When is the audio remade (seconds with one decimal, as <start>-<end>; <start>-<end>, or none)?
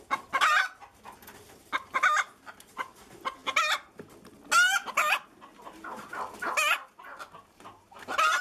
none